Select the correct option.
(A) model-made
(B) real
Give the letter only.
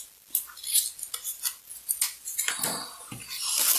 B